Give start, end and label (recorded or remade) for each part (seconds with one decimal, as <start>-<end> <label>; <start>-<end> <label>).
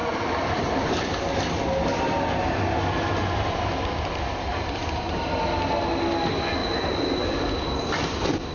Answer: 0.0-1.2 remade; 1.2-4.5 recorded; 4.5-5.5 remade; 5.5-8.5 recorded